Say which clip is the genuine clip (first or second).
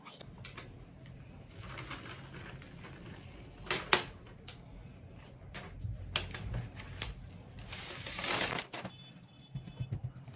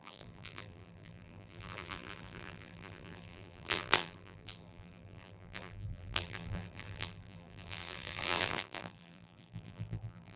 first